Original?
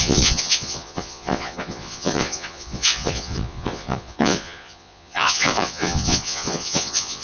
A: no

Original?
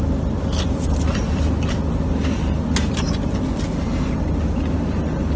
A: yes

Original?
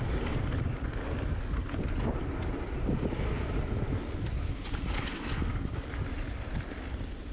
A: yes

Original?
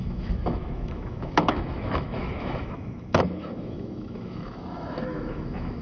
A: no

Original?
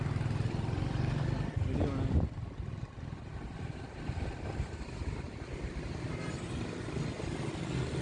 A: yes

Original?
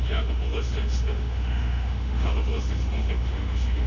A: no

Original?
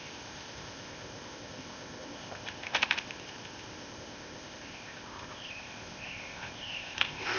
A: no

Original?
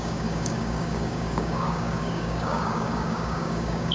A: no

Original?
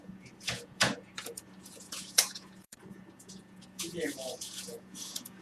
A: no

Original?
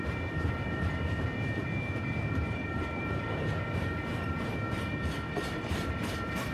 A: no